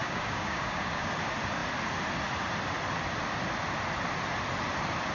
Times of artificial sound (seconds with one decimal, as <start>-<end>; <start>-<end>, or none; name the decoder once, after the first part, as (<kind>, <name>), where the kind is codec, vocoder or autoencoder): 0.0-1.1 (codec, DAC)